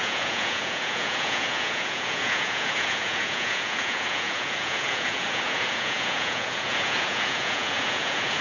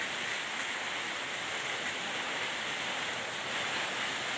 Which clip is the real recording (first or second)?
second